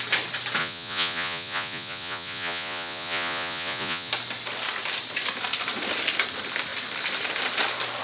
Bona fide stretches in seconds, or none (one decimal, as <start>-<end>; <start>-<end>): 0.0-0.6; 4.1-8.0